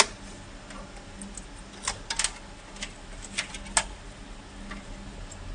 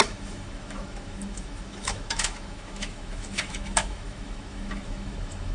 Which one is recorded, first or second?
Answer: first